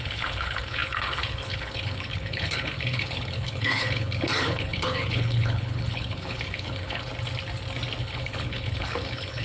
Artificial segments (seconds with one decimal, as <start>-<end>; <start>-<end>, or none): 0.0-7.1; 8.0-9.4